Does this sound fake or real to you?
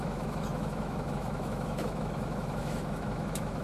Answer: fake